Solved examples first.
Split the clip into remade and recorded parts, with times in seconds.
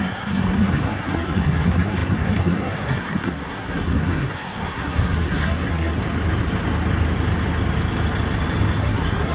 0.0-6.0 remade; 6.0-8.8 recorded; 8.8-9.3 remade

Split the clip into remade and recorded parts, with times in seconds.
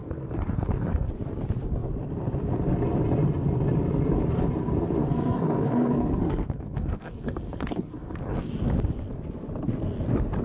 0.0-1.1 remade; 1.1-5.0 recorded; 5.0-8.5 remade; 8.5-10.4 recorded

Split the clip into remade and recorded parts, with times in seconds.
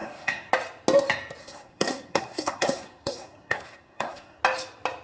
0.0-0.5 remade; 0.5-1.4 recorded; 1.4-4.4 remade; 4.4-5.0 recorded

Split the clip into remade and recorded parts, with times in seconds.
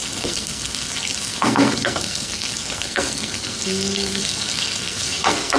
0.0-5.6 remade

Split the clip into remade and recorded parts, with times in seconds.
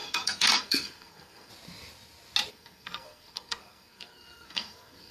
0.0-1.5 remade; 1.5-2.5 recorded; 2.5-5.1 remade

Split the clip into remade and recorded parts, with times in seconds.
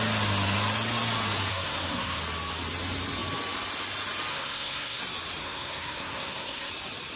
0.0-1.5 recorded; 1.5-2.2 remade; 2.2-4.3 recorded; 4.3-5.0 remade; 5.0-5.4 recorded; 5.4-6.7 remade; 6.7-7.2 recorded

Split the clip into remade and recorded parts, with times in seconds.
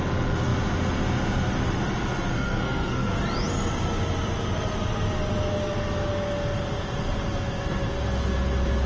0.0-2.3 recorded; 2.3-3.1 remade; 3.1-8.9 recorded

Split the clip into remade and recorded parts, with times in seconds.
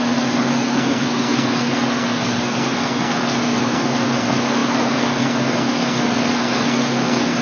0.0-7.4 remade